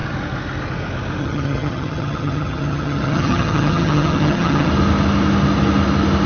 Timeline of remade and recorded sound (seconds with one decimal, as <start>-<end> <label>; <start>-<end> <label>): 0.0-1.2 recorded; 1.2-4.7 remade; 4.7-6.3 recorded